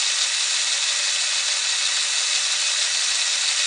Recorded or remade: recorded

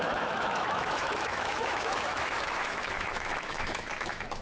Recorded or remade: remade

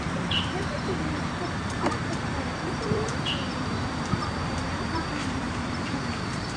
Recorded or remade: remade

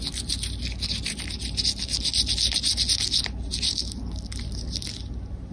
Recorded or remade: recorded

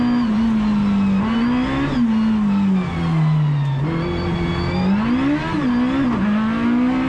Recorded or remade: recorded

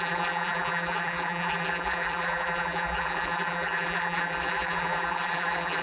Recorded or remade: remade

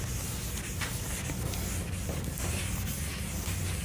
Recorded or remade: recorded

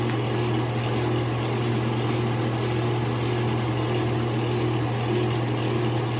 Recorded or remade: recorded